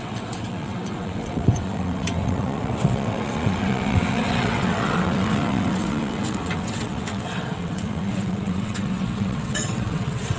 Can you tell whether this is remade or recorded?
remade